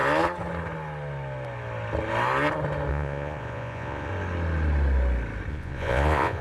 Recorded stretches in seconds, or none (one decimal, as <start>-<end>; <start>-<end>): 0.0-2.9; 4.1-5.5